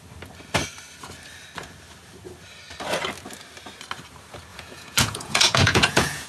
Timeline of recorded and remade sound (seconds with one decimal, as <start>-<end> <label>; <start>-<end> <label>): 0.0-4.5 recorded; 4.5-6.3 remade